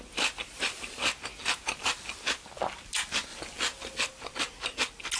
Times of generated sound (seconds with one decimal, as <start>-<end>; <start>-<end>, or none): none